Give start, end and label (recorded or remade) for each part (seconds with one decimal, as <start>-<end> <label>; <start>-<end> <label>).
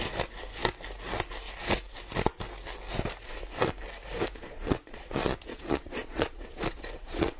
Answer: 0.0-4.4 recorded; 4.4-7.4 remade